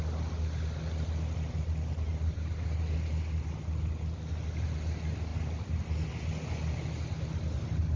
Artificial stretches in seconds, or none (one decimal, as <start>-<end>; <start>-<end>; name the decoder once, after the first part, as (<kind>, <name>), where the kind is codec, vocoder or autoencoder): none